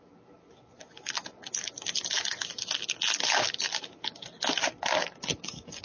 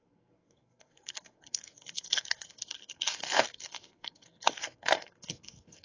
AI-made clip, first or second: second